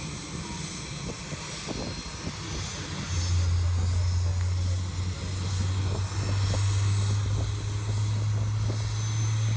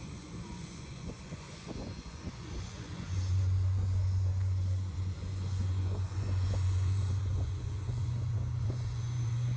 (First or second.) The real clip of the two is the first